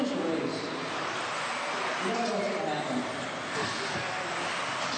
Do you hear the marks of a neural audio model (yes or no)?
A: no